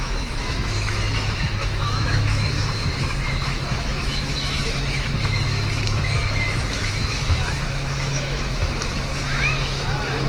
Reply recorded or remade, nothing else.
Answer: remade